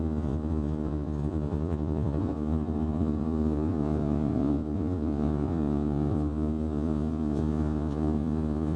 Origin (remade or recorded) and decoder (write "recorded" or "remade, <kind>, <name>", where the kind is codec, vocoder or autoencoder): remade, vocoder, Vocos